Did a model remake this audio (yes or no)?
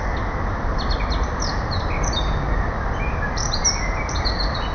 no